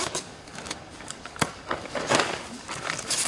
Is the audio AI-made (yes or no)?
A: yes